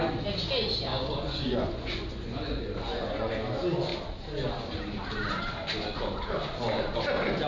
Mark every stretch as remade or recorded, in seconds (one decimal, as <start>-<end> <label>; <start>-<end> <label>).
0.0-0.9 recorded; 0.9-3.3 remade; 3.3-7.5 recorded